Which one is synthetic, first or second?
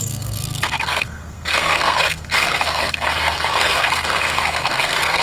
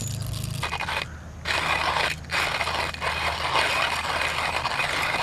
first